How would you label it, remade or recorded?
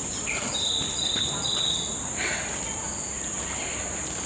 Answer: recorded